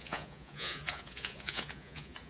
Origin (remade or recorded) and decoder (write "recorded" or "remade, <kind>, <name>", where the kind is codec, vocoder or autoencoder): remade, vocoder, Vocos